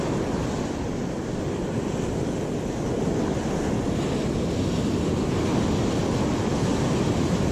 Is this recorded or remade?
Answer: recorded